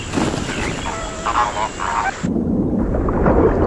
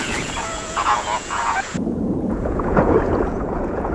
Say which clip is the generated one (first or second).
second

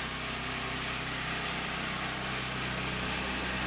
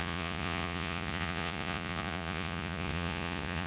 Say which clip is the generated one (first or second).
second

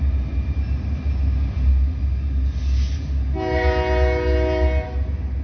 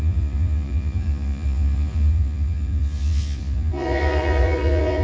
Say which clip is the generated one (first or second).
second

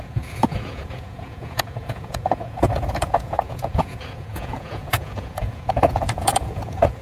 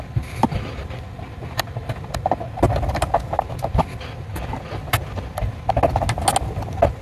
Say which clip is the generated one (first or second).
first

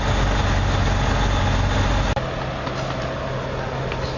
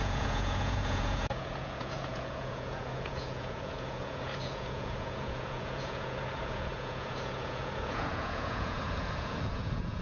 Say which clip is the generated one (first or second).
second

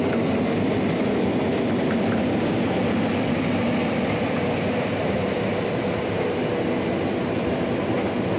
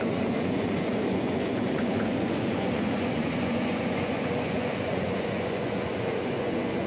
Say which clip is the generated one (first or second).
second